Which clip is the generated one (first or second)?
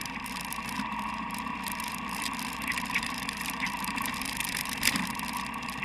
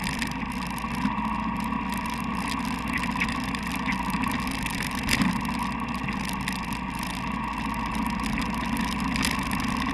first